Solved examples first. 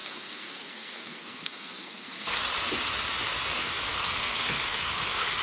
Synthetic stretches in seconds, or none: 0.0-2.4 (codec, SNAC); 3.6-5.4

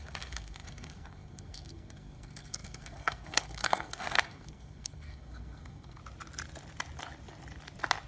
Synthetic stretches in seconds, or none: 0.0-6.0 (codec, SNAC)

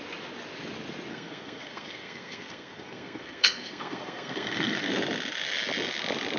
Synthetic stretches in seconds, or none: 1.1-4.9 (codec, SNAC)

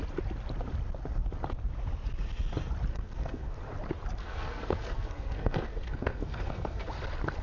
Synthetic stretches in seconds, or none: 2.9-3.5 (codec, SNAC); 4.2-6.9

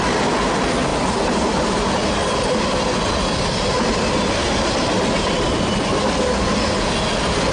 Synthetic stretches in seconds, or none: none

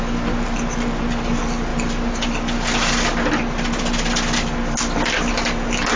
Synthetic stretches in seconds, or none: none

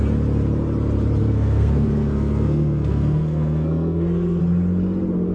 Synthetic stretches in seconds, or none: 1.2-4.4 (codec, SNAC)

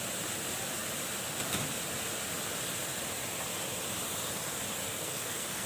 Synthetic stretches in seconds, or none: 4.8-5.7 (codec, SNAC)